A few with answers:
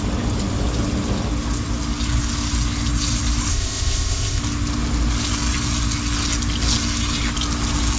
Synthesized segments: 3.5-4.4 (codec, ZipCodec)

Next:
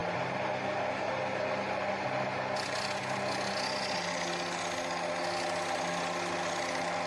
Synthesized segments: none

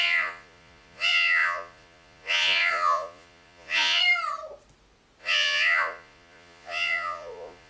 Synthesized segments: 0.0-4.0 (vocoder, Vocos); 5.2-7.7